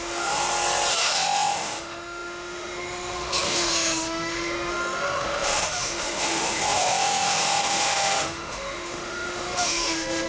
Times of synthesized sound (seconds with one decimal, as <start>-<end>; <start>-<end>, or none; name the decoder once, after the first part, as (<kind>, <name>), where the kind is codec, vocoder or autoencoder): 0.0-0.4 (autoencoder, DAC-VAE); 0.9-10.3